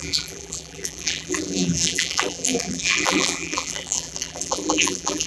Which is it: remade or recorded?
remade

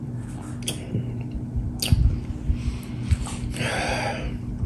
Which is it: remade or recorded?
recorded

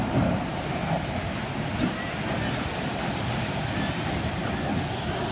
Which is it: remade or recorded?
recorded